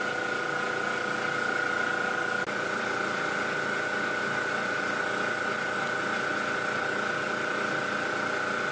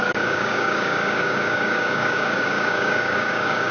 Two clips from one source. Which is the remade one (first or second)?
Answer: second